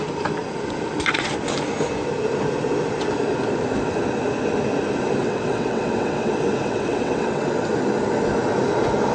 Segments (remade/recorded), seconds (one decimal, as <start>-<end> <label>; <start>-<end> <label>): 0.0-5.2 recorded; 5.2-7.7 remade; 7.7-9.1 recorded